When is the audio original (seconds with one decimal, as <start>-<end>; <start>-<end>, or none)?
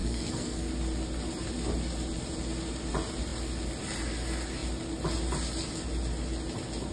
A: 0.7-6.9